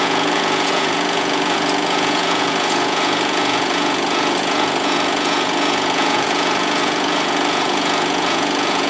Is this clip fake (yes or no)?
yes